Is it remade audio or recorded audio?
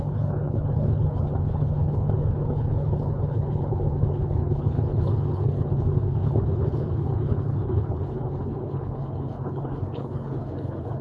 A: remade